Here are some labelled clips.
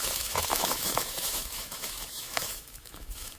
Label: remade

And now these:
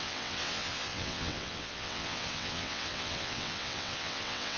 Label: remade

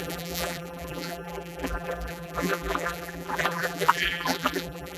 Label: remade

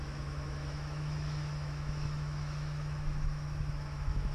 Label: remade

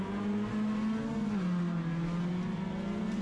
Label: recorded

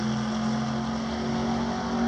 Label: recorded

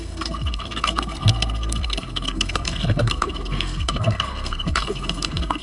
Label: remade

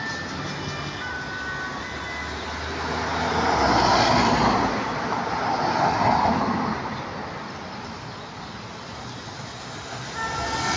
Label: recorded